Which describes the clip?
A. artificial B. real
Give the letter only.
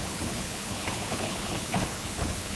A